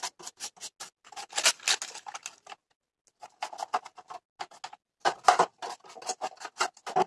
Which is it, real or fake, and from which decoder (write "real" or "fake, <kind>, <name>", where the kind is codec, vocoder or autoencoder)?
real